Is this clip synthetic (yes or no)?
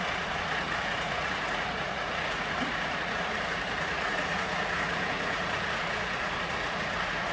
yes